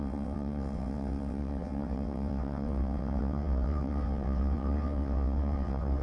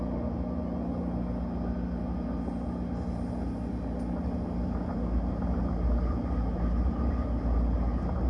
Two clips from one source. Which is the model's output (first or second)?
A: first